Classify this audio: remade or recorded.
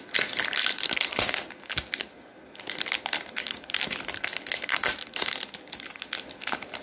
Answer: recorded